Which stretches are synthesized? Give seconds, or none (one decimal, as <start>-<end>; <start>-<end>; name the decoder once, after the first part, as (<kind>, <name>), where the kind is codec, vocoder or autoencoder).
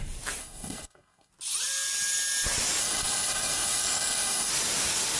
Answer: 0.4-1.3 (codec, SNAC); 2.8-4.5